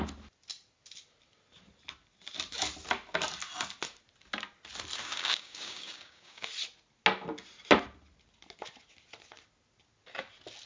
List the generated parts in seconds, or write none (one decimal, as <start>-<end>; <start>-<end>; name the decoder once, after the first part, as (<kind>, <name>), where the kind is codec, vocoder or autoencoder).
5.0-6.5 (codec, DAC)